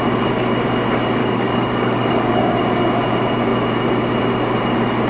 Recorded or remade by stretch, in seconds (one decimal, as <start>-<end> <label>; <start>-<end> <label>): 0.0-1.2 recorded; 1.2-2.6 remade; 2.6-5.1 recorded